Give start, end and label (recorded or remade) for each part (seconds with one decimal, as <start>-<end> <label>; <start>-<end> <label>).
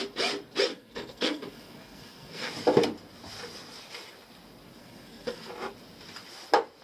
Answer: 0.0-0.7 recorded; 0.7-2.5 remade; 2.5-4.8 recorded; 4.8-5.5 remade; 5.5-6.8 recorded